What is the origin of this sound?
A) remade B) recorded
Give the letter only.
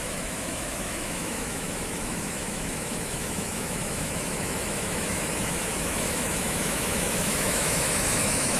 A